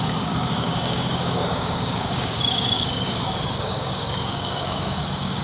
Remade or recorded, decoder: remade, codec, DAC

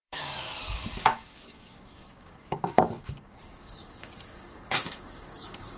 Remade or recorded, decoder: remade, codec, DAC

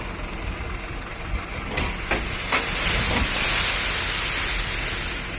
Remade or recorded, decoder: recorded